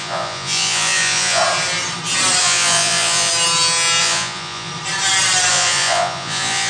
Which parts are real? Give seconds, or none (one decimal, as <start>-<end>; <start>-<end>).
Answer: 1.4-2.4; 3.3-4.0; 4.7-5.5